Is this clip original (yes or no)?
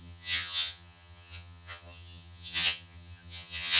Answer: no